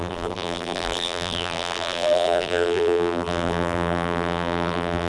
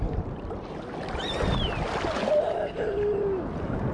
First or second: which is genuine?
second